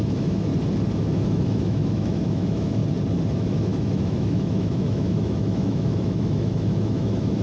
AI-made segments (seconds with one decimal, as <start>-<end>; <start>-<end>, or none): 0.0-0.5; 1.0-2.8; 3.3-7.4

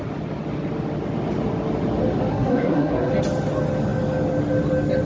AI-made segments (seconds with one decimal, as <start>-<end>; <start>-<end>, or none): 2.3-3.1

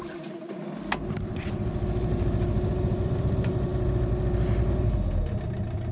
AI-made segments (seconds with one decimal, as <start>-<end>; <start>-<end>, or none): none

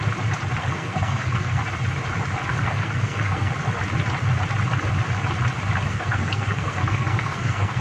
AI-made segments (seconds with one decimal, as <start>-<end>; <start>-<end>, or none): 0.6-1.6; 2.5-3.5; 5.9-7.8

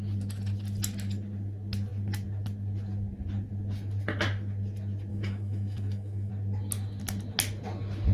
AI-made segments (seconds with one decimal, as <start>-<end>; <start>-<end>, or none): 5.1-6.3

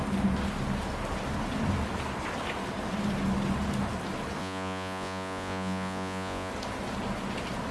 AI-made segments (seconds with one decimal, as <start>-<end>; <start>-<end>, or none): 4.4-6.5